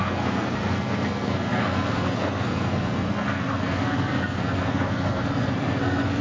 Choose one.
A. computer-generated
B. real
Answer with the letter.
A